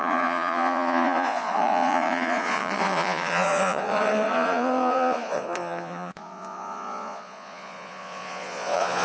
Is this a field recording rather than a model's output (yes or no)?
no